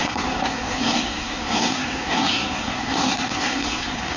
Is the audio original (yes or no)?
no